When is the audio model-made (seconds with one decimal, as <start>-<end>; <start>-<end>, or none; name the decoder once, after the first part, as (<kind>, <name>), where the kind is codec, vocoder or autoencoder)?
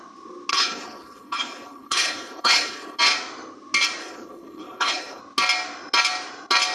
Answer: 0.5-3.0 (codec, HILCodec); 4.0-5.2